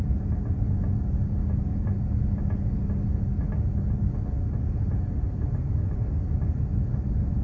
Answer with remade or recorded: recorded